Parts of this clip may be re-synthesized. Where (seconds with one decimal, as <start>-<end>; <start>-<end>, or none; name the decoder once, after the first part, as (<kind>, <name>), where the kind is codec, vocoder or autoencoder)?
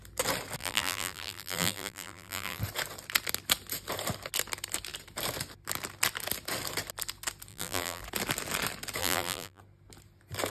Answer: 0.6-2.6 (vocoder, BigVGAN v2); 7.5-8.0; 9.0-9.6